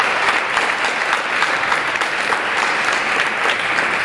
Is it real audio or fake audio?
real